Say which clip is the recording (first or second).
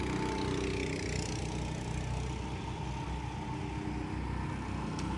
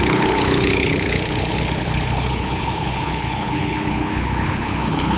first